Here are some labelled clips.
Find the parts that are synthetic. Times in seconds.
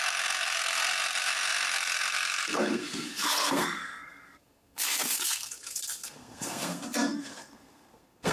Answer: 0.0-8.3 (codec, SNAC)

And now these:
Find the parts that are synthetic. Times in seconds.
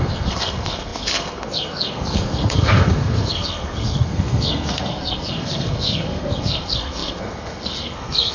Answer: 0.0-8.3 (codec, SNAC)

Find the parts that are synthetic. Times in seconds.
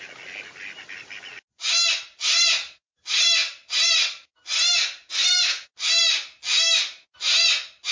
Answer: none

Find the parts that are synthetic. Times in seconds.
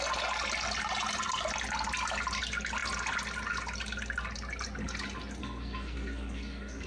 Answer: 5.4-6.9 (codec, SNAC)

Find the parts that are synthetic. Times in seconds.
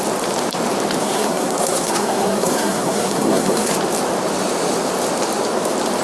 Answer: 1.0-3.7 (codec, SNAC)